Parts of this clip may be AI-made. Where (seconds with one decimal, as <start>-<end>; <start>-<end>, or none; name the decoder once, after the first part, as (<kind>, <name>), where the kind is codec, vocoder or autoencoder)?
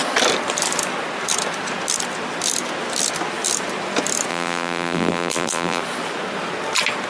4.3-5.8 (vocoder, BigVGAN v2)